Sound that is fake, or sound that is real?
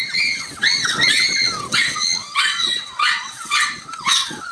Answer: fake